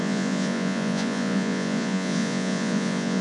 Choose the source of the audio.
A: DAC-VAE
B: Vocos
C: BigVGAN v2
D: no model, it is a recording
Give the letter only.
B